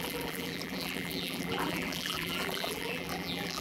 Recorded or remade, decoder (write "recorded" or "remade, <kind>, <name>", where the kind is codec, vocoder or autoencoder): remade, vocoder, BigVGAN v2